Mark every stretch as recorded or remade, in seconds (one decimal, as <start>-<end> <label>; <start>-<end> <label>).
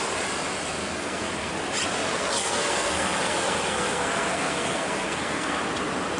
0.0-0.8 recorded; 0.8-1.5 remade; 1.5-2.1 recorded; 2.1-5.6 remade; 5.6-6.2 recorded